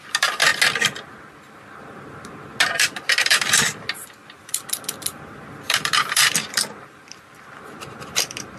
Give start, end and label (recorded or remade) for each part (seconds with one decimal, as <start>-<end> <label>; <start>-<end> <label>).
0.0-0.5 remade; 0.5-2.7 recorded; 2.7-8.6 remade